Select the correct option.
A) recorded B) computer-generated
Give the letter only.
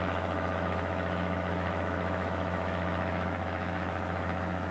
B